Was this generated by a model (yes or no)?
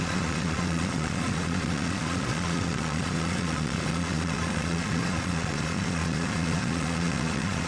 yes